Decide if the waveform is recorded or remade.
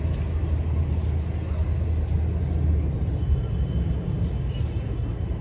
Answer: recorded